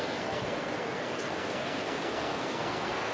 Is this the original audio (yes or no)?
no